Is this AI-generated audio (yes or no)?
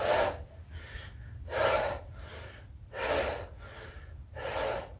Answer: no